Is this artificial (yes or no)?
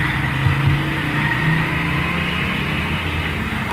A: no